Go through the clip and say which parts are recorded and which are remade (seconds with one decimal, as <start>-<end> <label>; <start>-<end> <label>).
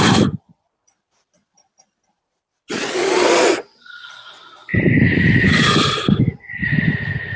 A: 0.0-7.4 remade